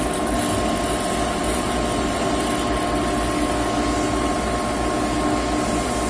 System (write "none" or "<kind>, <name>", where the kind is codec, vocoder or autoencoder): none